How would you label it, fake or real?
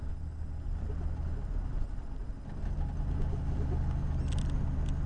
real